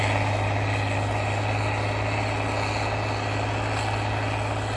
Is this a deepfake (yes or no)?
no